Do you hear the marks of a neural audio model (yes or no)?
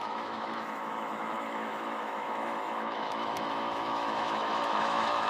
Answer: yes